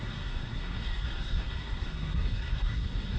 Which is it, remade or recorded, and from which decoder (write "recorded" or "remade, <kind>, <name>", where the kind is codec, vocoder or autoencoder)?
remade, codec, SNAC